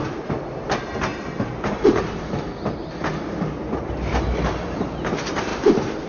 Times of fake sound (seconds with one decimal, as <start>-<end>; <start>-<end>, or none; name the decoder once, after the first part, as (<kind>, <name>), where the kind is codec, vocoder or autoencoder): none